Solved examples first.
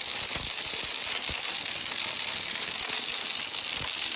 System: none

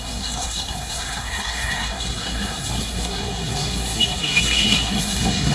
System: codec, SNAC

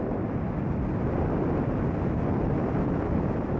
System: none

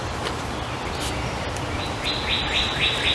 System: none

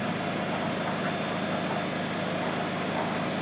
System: none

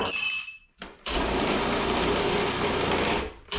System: none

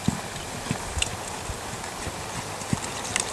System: none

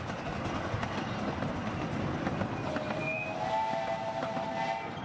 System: none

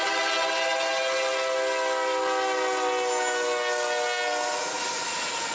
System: none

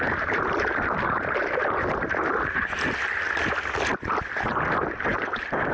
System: none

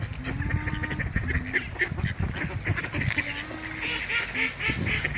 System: none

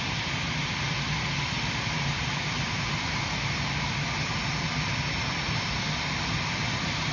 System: none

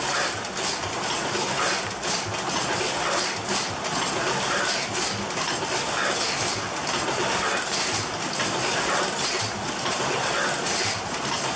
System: none